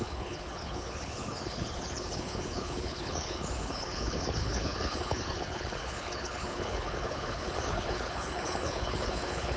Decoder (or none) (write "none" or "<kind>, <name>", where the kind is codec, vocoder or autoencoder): codec, HILCodec